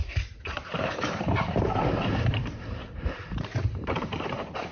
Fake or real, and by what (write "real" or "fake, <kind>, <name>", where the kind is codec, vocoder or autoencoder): fake, vocoder, BigVGAN v2